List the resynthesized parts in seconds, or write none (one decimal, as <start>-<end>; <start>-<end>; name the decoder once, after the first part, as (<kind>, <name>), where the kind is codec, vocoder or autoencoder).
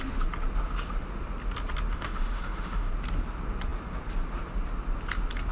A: 1.9-2.9 (autoencoder, DAC-VAE)